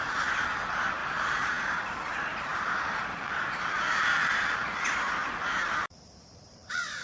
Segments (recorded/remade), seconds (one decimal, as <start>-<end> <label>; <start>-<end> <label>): 0.0-1.0 recorded; 1.0-1.5 remade; 1.5-2.5 recorded; 2.5-4.9 remade; 4.9-5.8 recorded; 5.8-7.0 remade